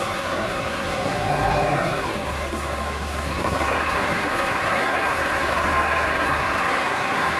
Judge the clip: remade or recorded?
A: remade